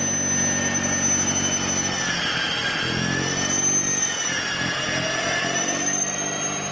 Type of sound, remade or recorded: recorded